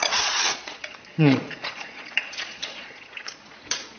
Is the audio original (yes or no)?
no